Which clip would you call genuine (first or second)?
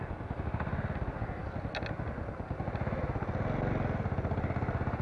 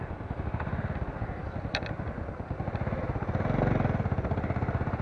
first